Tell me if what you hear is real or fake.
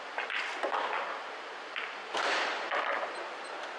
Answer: real